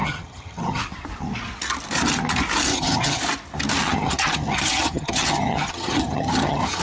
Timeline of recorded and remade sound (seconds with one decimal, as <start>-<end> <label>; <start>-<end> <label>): 0.0-0.8 remade; 0.8-2.7 recorded; 2.7-3.2 remade; 3.2-3.8 recorded; 3.8-6.8 remade